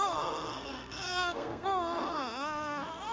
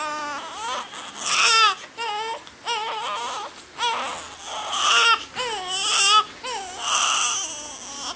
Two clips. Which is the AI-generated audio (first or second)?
first